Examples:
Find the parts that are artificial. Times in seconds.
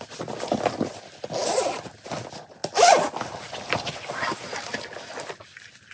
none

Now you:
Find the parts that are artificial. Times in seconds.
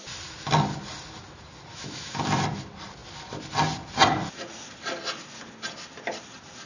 1.7-2.2 (autoencoder, DAC-VAE)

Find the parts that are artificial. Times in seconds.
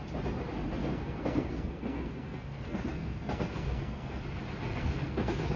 0.8-4.2 (codec, SNAC); 4.7-5.6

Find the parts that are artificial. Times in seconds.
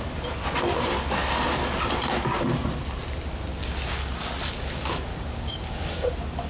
3.6-4.3 (codec, DAC); 5.1-6.1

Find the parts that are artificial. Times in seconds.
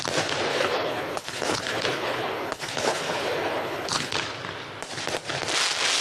0.5-4.1 (codec, HILCodec)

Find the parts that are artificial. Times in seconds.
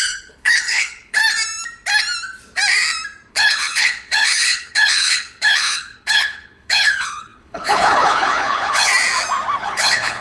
0.0-1.2 (codec, HILCodec); 3.3-8.9; 9.6-10.2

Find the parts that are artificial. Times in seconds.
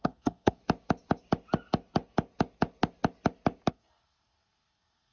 0.0-0.6 (codec, SNAC); 3.7-5.1